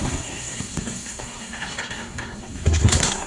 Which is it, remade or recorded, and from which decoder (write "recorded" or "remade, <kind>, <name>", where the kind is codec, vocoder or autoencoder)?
remade, codec, SNAC